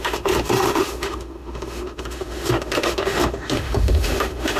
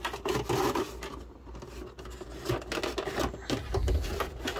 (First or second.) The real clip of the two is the second